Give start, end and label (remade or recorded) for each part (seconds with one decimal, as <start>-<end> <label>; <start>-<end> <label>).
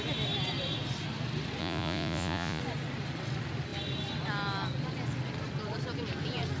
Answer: 0.0-1.6 recorded; 1.6-2.6 remade; 2.6-6.6 recorded